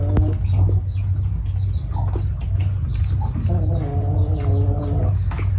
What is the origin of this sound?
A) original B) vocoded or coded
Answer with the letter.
A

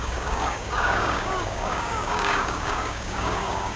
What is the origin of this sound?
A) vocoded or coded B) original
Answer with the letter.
A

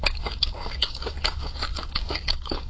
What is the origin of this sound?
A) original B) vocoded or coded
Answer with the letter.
B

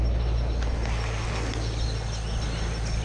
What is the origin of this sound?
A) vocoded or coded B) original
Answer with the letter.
B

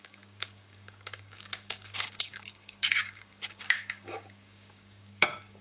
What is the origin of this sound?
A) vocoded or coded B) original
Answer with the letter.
A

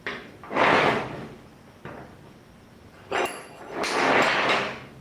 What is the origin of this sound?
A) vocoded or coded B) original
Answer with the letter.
B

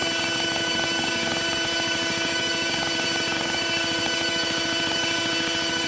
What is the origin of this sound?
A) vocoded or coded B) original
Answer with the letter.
A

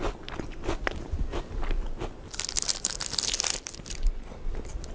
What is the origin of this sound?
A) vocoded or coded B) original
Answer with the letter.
B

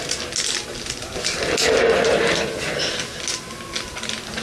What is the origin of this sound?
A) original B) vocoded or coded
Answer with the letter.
A